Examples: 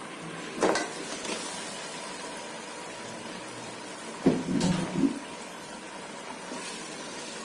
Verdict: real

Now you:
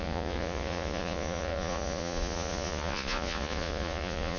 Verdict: fake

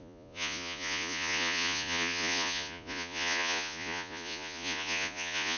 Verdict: fake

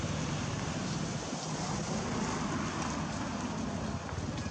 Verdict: real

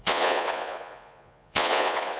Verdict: fake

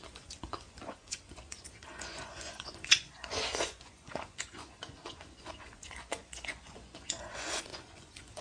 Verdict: fake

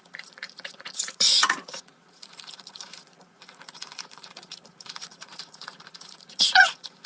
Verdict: fake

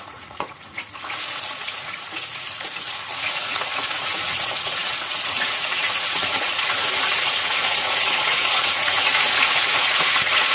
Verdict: fake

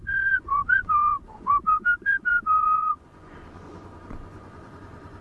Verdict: fake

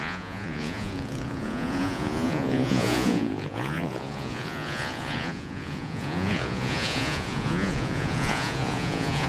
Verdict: fake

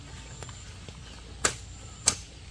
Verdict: real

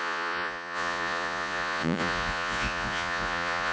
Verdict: fake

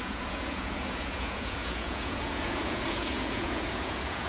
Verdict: fake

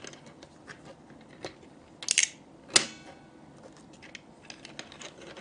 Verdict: real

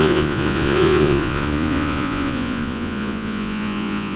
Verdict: fake